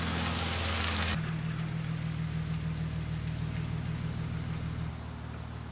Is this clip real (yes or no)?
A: yes